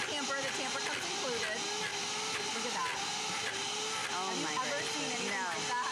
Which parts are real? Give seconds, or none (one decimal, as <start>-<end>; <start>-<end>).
0.0-5.9